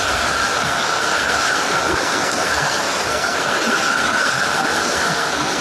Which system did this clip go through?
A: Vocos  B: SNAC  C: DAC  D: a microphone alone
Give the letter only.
B